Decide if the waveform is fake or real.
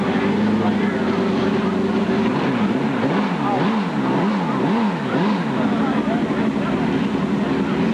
real